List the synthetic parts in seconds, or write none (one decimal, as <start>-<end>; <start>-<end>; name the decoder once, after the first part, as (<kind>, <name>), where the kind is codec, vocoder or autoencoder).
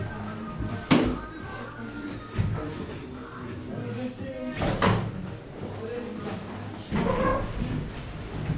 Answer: 1.5-2.1 (codec, DAC); 4.4-5.2